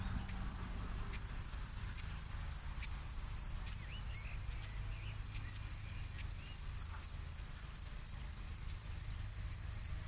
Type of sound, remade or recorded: recorded